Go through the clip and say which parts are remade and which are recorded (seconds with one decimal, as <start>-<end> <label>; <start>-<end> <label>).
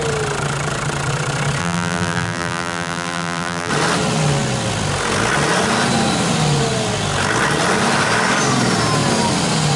0.0-1.6 recorded; 1.6-3.7 remade; 3.7-9.8 recorded